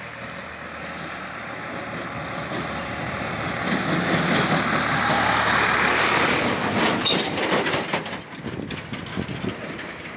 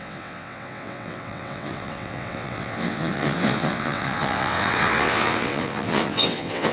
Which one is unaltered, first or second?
first